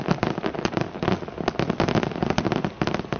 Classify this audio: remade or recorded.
recorded